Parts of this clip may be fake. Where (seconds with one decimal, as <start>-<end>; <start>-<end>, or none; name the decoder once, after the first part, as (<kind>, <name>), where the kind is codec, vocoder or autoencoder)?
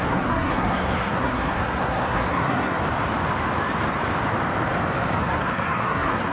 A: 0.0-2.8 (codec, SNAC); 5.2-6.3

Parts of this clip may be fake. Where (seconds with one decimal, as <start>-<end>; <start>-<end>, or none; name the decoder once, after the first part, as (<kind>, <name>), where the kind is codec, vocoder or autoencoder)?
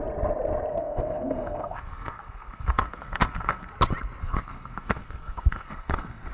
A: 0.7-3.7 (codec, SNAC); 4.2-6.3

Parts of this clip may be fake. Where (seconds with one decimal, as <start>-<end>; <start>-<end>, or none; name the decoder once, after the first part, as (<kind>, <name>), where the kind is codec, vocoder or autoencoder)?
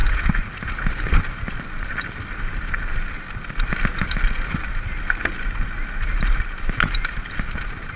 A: none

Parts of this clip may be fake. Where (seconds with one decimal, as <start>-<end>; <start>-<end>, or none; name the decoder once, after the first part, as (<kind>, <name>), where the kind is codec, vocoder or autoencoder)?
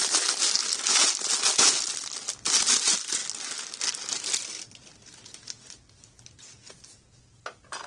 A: none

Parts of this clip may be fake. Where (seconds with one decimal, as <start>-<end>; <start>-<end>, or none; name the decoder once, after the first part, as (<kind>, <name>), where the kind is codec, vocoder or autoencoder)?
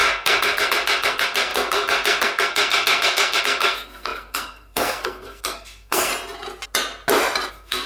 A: 0.0-6.1 (codec, SNAC); 7.5-7.9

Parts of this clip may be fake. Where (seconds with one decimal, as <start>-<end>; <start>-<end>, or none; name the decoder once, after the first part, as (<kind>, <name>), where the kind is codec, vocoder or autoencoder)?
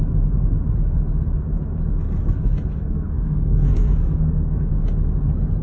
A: 2.7-4.7 (codec, SNAC)